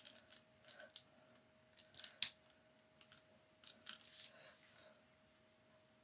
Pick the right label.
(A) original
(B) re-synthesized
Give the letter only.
A